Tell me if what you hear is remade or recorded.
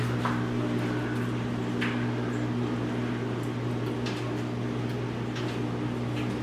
recorded